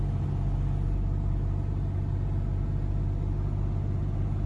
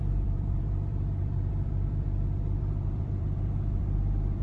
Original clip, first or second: first